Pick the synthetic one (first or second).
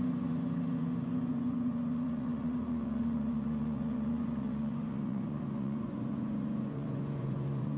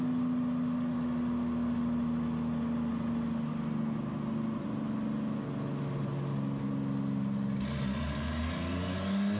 first